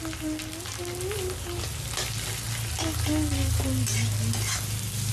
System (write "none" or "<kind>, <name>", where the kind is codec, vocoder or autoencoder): none